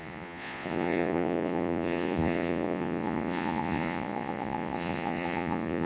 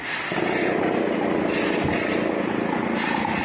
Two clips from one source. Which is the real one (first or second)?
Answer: second